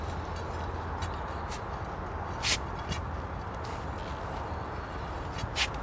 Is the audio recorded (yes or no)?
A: yes